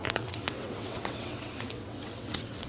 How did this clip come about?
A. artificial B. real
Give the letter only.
A